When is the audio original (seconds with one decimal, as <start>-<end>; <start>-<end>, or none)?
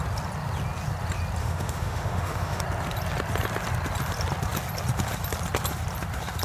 0.0-1.4; 2.6-6.4